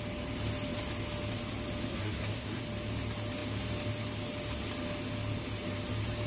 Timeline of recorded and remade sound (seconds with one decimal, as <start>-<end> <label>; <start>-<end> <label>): 0.0-1.9 recorded; 1.9-2.6 remade; 2.6-6.3 recorded